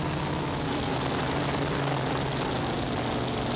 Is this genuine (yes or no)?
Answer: yes